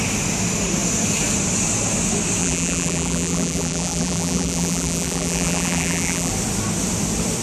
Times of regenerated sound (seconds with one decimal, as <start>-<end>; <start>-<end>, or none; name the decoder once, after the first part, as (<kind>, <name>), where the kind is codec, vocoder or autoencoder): 2.4-6.3 (vocoder, BigVGAN v2)

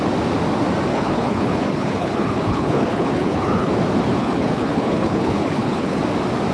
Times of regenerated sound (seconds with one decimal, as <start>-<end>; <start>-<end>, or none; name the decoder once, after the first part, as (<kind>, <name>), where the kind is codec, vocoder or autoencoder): 0.9-3.7 (codec, HILCodec); 4.2-6.0

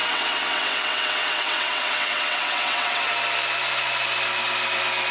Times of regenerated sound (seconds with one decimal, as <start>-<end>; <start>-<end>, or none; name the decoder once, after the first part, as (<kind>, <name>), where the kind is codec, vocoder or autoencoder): 0.0-3.1 (vocoder, WaveNeXt)

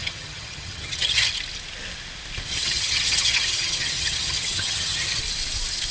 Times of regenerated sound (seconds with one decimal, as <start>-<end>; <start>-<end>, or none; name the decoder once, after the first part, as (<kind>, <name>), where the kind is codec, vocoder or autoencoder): 0.0-1.3 (vocoder, HiFi-GAN); 2.5-5.2